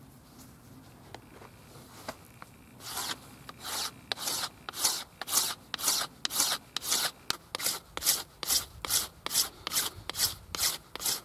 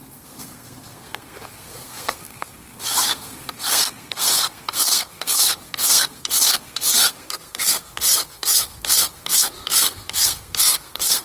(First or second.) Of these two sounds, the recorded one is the first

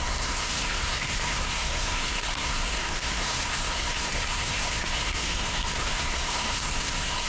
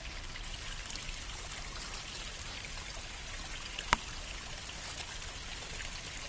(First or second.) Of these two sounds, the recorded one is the second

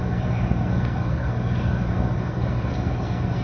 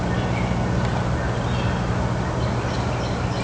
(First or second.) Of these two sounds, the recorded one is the second